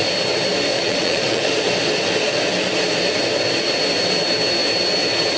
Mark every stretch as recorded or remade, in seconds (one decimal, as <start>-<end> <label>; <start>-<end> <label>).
0.0-0.7 recorded; 0.7-1.5 remade; 1.5-5.4 recorded